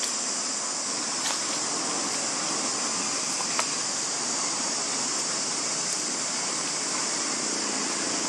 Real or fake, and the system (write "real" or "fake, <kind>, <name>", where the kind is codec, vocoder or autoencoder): real